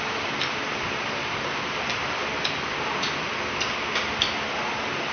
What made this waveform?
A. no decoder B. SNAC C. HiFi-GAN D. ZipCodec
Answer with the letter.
A